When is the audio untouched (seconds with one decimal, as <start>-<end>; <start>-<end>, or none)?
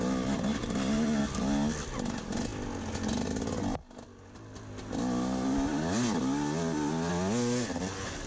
0.0-8.3